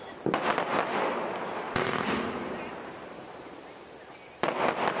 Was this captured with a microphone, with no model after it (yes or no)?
yes